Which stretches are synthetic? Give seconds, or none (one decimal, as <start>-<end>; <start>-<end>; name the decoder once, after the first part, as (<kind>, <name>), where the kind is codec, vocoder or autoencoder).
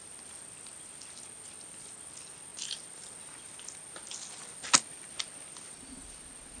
none